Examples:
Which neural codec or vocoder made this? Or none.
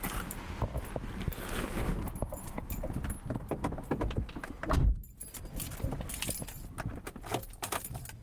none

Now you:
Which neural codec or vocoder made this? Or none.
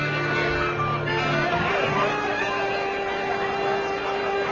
none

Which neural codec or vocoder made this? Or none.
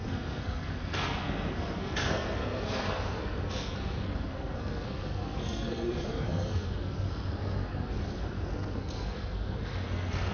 codec, SNAC